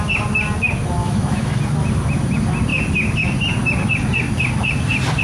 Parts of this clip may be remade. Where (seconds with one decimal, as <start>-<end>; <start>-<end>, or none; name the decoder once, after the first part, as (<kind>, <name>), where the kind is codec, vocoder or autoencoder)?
1.0-1.5 (autoencoder, DAC-VAE)